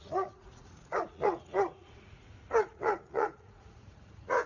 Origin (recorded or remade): remade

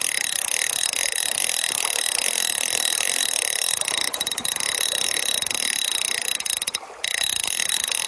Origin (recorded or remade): recorded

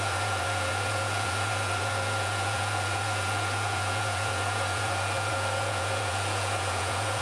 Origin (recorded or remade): remade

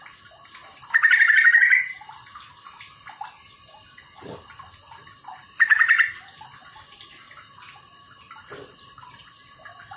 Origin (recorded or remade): recorded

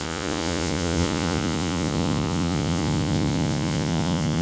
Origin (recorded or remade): remade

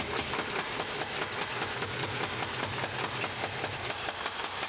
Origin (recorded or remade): recorded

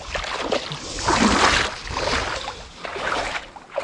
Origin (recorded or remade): recorded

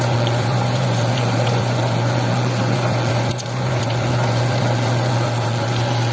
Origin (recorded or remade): remade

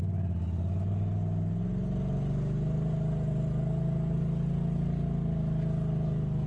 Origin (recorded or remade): recorded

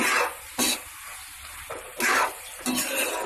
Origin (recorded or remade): recorded